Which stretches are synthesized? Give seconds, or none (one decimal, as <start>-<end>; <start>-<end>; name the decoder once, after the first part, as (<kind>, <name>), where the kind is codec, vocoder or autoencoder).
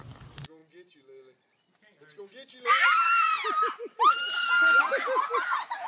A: none